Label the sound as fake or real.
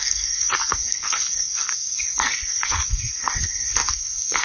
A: fake